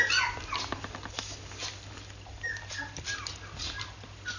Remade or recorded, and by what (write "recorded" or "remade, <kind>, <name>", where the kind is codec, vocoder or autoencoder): recorded